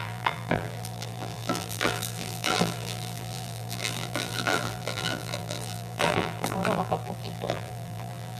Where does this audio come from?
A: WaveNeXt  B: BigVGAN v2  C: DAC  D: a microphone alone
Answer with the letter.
B